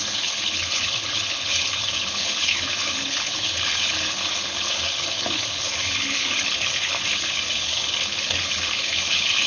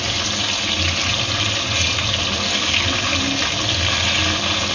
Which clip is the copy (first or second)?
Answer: first